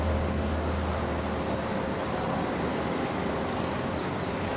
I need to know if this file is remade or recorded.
recorded